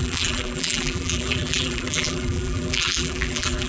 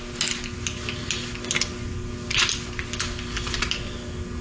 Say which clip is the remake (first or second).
first